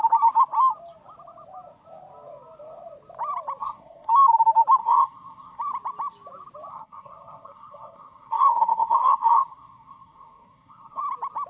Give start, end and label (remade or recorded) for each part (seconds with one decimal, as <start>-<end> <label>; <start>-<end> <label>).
0.0-3.6 recorded; 3.6-4.1 remade; 4.1-4.8 recorded; 4.8-5.6 remade; 5.6-6.7 recorded; 6.7-11.0 remade; 11.0-11.5 recorded